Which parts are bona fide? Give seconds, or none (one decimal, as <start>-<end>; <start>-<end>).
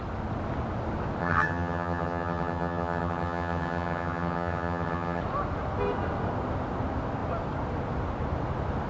0.0-1.2; 5.2-8.9